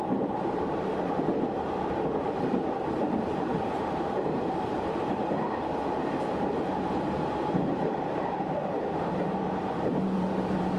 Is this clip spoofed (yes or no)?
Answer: yes